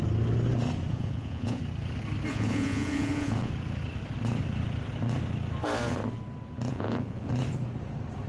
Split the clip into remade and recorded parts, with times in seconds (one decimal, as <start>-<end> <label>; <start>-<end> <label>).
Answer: 0.0-0.9 recorded; 0.9-1.6 remade; 1.6-2.3 recorded; 2.3-3.5 remade; 3.5-6.7 recorded; 6.7-7.3 remade; 7.3-8.3 recorded